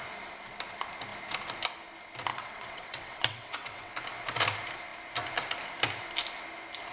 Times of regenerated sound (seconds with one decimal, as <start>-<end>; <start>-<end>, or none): 2.3-3.9